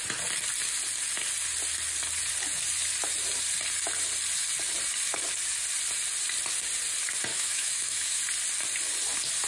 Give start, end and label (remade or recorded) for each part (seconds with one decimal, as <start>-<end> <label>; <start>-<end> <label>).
0.0-7.3 recorded; 7.3-8.2 remade; 8.2-9.5 recorded

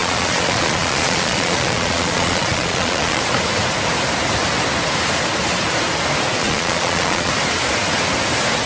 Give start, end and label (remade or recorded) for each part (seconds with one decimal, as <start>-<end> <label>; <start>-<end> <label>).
0.0-3.2 remade; 3.2-6.4 recorded; 6.4-7.3 remade; 7.3-8.7 recorded

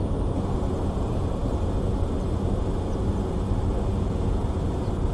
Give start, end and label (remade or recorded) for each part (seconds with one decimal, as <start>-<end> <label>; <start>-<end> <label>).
0.0-5.1 recorded

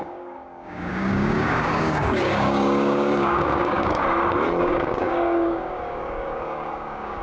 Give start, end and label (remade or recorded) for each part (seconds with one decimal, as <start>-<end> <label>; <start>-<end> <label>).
0.0-4.0 remade; 4.0-4.6 recorded; 4.6-7.2 remade

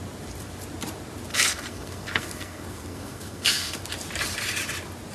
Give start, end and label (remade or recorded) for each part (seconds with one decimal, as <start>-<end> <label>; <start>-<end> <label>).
0.0-1.3 recorded; 1.3-3.8 remade; 3.8-5.1 recorded

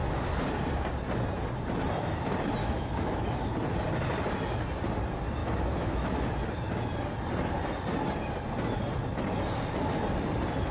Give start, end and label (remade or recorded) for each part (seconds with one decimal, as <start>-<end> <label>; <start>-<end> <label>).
0.0-2.6 recorded; 2.6-3.5 remade; 3.5-5.4 recorded; 5.4-6.3 remade; 6.3-10.7 recorded

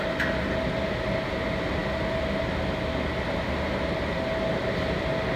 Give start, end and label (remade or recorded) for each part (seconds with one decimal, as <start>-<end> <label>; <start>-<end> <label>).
0.0-5.4 recorded

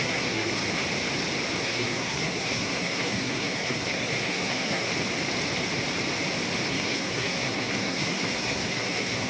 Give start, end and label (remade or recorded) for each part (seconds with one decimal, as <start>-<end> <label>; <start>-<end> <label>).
0.0-0.6 remade; 0.6-1.6 recorded; 1.6-4.9 remade; 4.9-6.7 recorded; 6.7-9.3 remade